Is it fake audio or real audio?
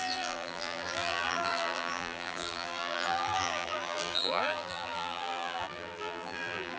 fake